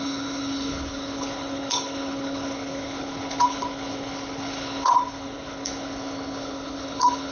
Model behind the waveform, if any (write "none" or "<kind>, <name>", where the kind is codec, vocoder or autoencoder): codec, HILCodec